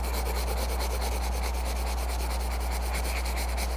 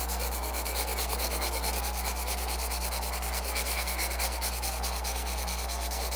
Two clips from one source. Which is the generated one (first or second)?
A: second